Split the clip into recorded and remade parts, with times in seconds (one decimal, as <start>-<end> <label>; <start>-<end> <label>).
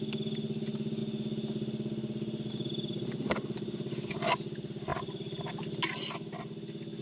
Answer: 0.0-7.0 recorded